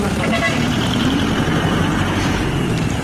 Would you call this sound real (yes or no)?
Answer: no